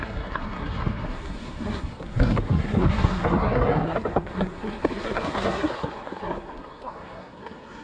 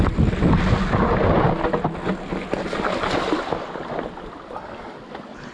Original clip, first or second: second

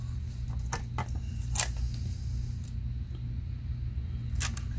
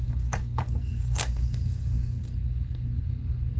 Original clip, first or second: first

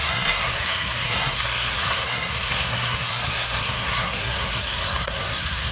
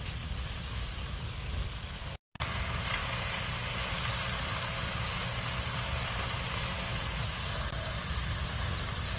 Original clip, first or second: second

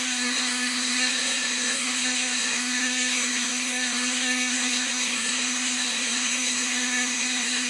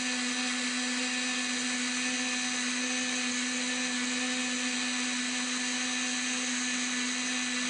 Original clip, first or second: second